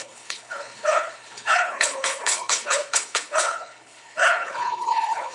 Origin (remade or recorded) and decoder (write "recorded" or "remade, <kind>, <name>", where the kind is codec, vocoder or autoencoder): remade, codec, HILCodec